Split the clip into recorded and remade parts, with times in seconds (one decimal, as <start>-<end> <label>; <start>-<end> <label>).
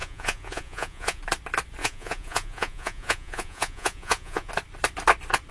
0.0-1.2 remade; 1.2-1.8 recorded; 1.8-4.5 remade; 4.5-5.5 recorded